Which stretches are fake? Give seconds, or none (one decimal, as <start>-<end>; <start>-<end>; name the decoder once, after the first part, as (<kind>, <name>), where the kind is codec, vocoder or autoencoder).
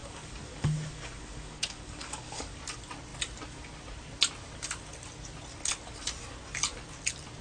0.0-2.6 (codec, DAC)